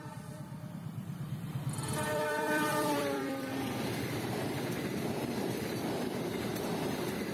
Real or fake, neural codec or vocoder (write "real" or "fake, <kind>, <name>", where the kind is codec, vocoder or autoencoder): fake, vocoder, BigVGAN v2